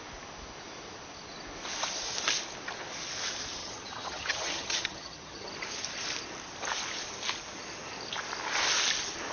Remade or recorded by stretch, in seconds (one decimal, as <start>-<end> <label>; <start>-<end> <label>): 0.0-3.6 recorded; 3.6-5.5 remade; 5.5-9.3 recorded